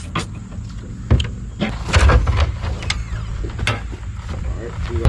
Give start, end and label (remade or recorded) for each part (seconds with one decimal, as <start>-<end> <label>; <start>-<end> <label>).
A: 0.0-5.1 recorded